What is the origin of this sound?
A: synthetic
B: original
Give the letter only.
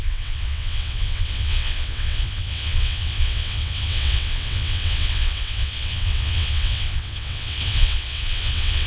A